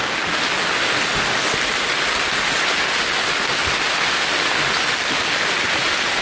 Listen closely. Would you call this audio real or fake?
real